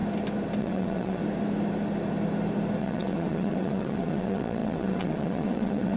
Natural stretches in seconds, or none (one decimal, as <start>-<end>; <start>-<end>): 0.0-0.6; 1.2-2.8